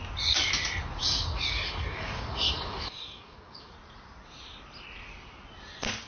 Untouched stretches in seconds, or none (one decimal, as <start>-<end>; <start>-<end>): 0.0-1.0; 3.7-6.1

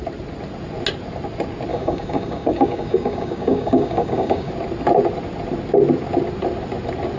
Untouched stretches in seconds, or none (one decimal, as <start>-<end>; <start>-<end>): 0.0-1.7; 4.5-7.2